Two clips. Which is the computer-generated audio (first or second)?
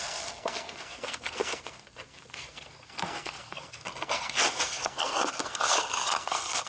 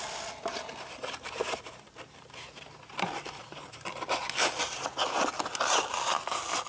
first